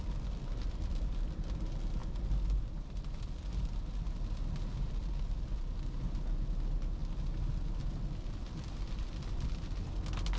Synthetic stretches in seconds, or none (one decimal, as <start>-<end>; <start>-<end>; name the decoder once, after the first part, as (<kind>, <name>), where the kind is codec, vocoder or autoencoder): none